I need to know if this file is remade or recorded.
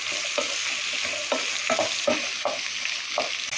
recorded